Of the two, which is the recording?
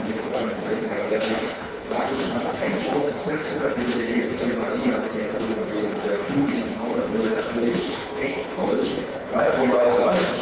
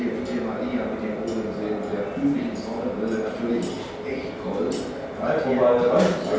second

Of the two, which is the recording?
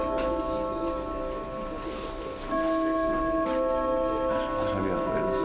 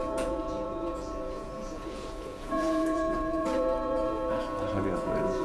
first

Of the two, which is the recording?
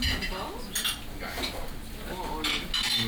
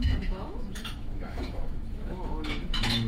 first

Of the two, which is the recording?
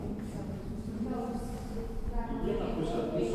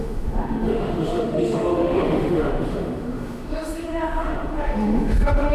first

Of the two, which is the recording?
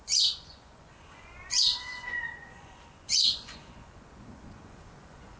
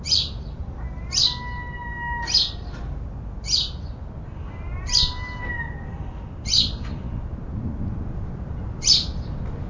second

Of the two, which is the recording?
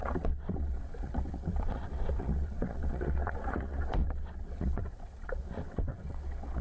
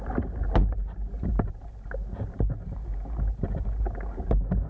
second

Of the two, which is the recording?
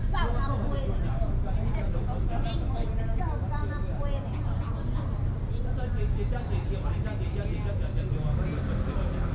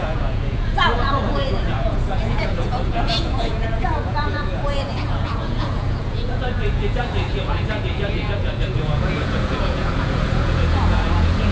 first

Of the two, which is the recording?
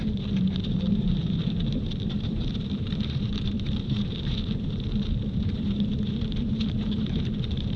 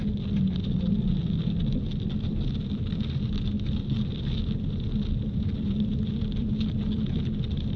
second